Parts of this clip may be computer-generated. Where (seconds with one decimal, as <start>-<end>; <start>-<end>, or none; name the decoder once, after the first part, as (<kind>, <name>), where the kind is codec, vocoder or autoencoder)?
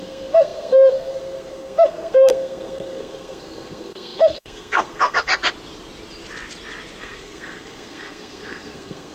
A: 0.0-5.3 (codec, SNAC); 7.0-9.1